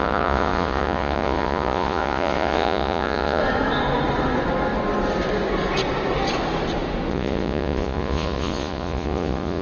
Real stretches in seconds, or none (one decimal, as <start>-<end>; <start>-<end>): 3.4-7.1